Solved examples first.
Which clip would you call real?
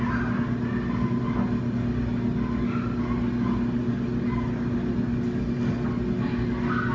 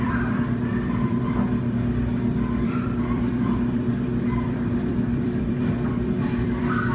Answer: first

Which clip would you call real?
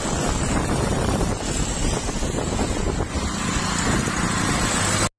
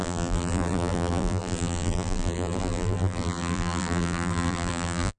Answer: first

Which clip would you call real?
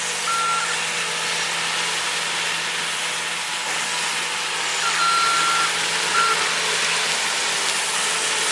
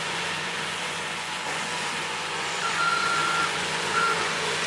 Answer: first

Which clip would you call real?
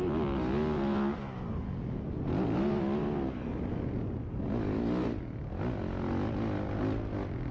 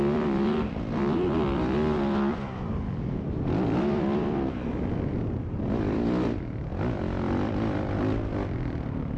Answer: first